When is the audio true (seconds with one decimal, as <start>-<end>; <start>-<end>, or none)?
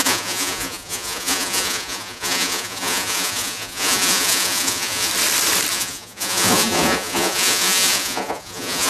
5.1-5.7